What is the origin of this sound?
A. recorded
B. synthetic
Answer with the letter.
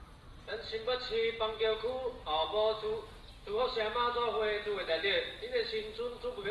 A